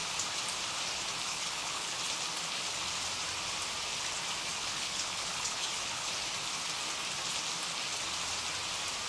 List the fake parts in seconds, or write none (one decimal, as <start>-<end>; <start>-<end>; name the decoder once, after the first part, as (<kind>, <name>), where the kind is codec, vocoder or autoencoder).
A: 1.3-1.9 (codec, HILCodec); 4.6-6.1